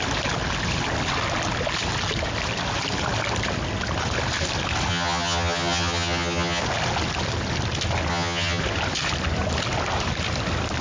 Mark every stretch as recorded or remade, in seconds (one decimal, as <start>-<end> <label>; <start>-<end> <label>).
0.0-4.9 recorded; 4.9-6.6 remade; 6.6-8.1 recorded; 8.1-8.6 remade; 8.6-10.8 recorded